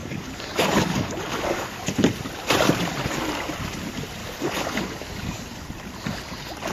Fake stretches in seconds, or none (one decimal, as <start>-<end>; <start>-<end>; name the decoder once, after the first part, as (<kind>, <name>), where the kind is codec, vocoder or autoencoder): 0.0-1.8 (codec, DAC); 4.2-5.4